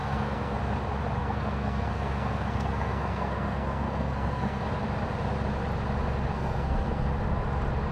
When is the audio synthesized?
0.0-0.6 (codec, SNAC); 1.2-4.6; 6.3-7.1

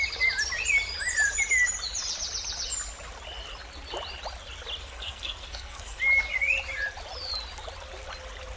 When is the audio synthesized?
4.8-6.0 (codec, SNAC)

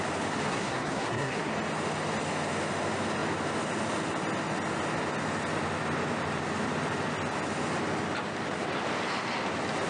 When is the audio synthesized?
0.5-1.5 (codec, SNAC)